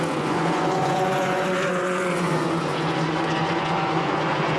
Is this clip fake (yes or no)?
yes